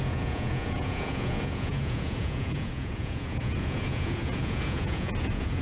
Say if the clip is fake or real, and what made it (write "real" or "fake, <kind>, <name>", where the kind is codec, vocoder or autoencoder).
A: fake, vocoder, Vocos